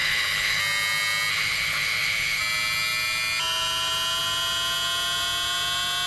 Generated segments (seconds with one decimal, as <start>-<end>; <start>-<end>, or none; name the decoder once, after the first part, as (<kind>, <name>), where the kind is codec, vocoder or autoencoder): 0.0-0.6 (codec, HILCodec); 1.3-2.4